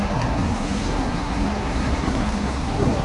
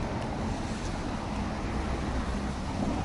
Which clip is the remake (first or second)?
first